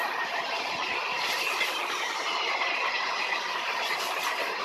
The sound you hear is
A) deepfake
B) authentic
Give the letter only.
A